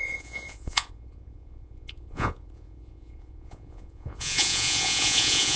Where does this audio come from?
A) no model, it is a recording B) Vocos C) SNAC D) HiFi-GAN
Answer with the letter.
B